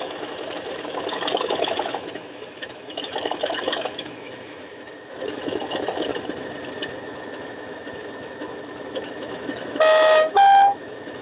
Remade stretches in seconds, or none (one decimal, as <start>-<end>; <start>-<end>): 0.0-6.1; 7.1-11.2